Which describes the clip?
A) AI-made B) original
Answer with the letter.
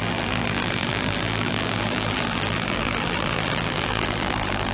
A